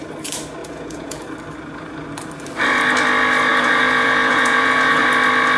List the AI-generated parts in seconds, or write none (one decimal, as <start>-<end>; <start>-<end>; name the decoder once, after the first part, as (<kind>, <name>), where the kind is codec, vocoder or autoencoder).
0.6-1.2 (vocoder, Vocos); 3.5-5.0